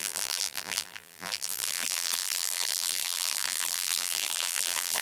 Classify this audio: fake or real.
fake